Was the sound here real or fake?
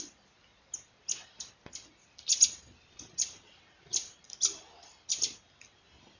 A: real